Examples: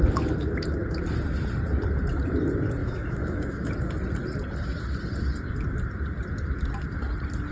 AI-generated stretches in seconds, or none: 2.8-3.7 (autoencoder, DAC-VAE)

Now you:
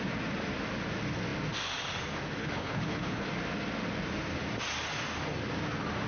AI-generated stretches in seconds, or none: 2.4-3.3 (codec, HILCodec)

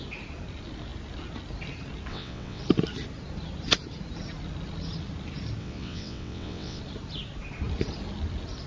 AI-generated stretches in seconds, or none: 2.1-2.6 (vocoder, WaveNeXt); 5.6-6.8

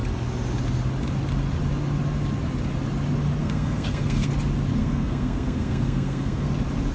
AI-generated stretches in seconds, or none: 3.4-4.3 (codec, SNAC); 4.8-6.5